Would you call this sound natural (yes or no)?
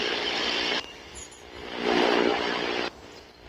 yes